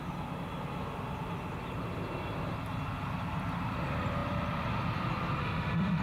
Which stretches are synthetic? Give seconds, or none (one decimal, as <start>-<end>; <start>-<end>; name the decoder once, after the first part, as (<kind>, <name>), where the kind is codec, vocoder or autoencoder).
5.4-6.0 (autoencoder, DAC-VAE)